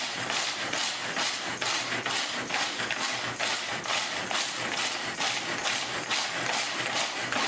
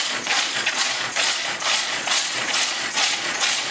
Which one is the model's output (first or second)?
second